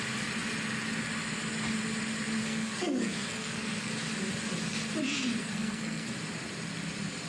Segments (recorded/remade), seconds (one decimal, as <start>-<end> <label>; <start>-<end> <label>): 0.0-2.4 recorded; 2.4-3.9 remade; 3.9-5.4 recorded; 5.4-6.1 remade; 6.1-7.3 recorded